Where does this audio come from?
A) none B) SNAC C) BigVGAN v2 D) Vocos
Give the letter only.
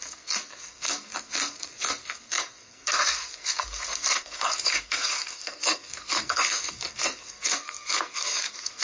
B